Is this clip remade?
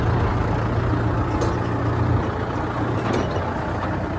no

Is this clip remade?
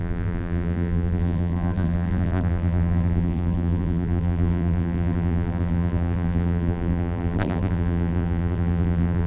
yes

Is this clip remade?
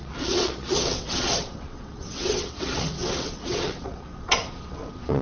yes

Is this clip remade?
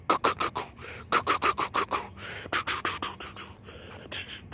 no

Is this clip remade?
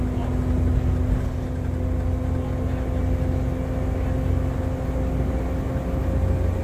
no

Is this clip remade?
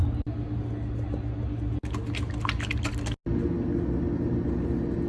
no